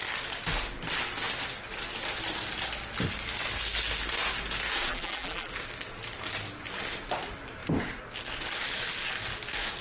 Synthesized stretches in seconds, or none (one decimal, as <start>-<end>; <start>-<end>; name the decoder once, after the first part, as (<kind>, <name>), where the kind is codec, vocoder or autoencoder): 4.9-5.5 (vocoder, BigVGAN v2)